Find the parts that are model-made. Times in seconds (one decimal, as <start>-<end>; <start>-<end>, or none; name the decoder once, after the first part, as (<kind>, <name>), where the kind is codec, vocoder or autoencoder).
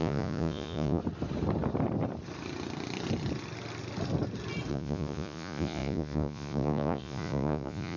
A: 0.0-1.0 (vocoder, Vocos); 4.7-8.0